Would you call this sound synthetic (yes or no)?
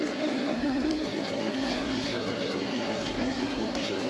yes